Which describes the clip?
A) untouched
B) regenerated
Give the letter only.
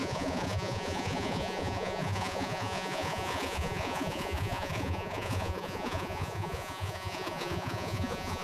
B